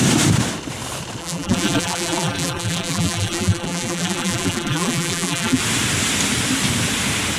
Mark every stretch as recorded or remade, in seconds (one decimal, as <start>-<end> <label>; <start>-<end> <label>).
0.0-1.2 recorded; 1.2-5.6 remade; 5.6-7.4 recorded